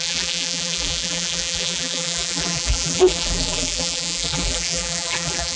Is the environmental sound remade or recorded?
remade